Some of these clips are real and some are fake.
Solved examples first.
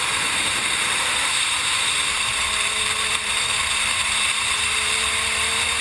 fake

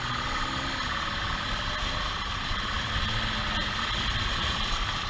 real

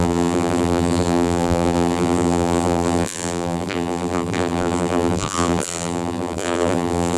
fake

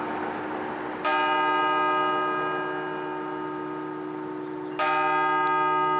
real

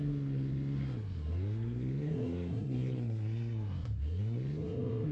fake